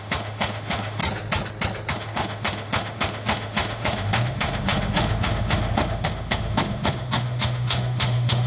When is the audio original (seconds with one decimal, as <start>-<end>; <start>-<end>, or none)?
1.0-1.9